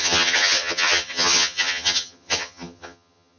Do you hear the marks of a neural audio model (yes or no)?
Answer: yes